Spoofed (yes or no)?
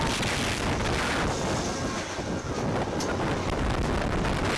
no